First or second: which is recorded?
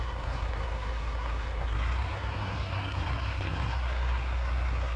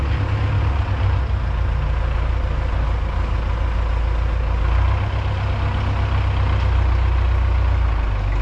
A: second